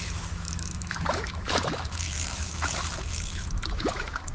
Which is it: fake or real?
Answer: fake